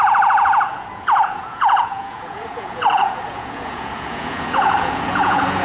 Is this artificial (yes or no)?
yes